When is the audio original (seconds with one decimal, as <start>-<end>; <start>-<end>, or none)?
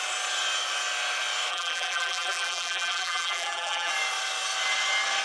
0.0-1.5; 3.9-5.2